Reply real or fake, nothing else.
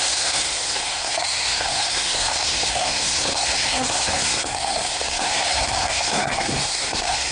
fake